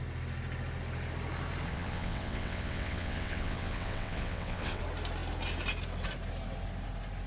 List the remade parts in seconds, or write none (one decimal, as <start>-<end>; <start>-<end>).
1.7-4.8